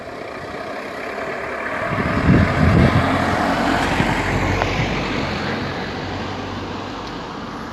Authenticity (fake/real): real